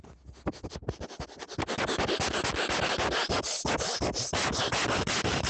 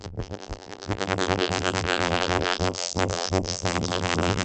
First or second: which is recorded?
first